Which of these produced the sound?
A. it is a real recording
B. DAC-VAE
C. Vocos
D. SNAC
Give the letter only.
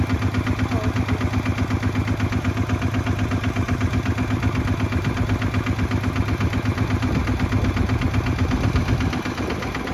A